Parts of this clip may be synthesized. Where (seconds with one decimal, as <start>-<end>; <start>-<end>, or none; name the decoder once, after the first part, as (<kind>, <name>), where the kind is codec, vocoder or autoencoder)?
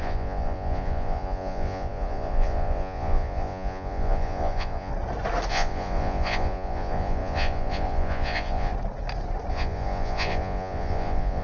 0.0-4.9 (vocoder, Vocos); 5.5-8.7; 9.5-11.4